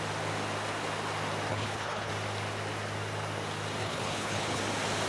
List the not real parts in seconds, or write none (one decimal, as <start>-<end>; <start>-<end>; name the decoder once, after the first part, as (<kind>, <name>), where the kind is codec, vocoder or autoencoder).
1.5-2.1 (codec, HILCodec); 3.8-4.6